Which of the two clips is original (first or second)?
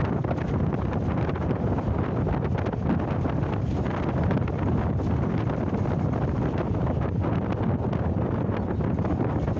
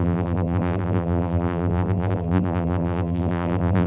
first